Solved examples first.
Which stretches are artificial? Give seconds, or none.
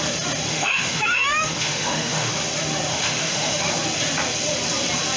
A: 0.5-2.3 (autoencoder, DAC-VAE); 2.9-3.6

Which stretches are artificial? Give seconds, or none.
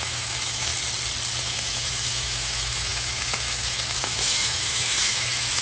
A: 0.0-0.7 (autoencoder, DAC-VAE); 1.4-5.6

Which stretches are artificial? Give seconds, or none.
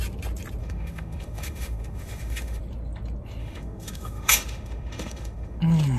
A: 0.6-2.6 (autoencoder, DAC-VAE); 3.4-5.6